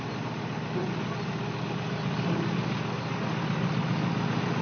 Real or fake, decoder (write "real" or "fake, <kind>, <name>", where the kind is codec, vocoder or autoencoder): real